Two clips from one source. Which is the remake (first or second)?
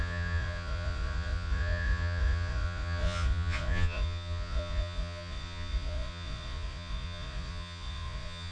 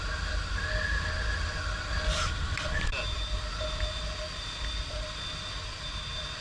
first